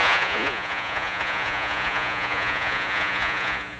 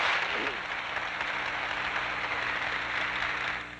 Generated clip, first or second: first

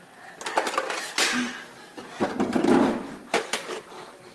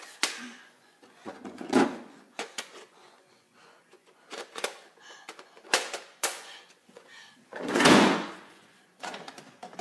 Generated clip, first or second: second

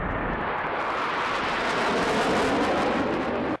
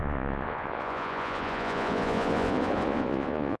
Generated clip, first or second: second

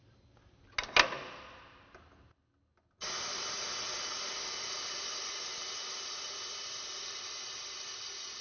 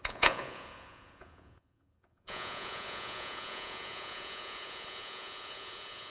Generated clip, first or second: second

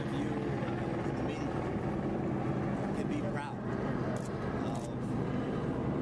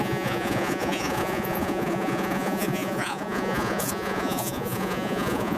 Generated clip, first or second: second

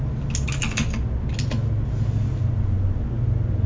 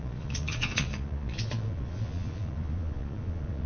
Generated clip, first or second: second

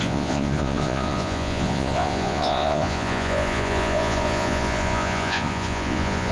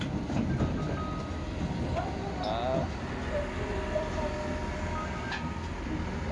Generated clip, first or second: first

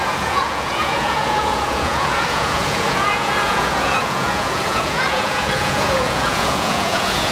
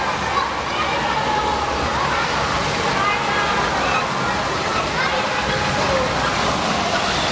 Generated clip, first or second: first